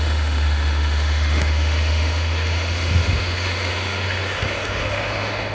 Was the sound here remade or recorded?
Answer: remade